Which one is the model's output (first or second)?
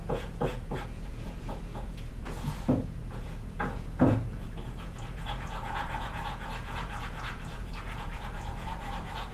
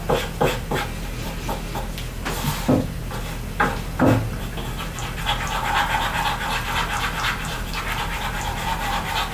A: first